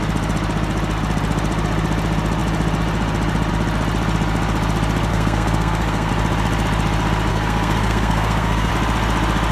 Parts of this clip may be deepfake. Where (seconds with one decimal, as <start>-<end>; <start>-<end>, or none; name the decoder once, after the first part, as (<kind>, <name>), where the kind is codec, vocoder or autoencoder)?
5.1-6.1 (codec, SNAC); 7.3-8.7